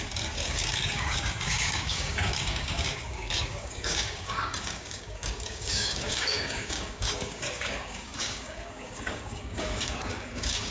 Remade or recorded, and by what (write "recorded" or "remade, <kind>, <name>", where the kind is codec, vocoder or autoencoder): remade, codec, DAC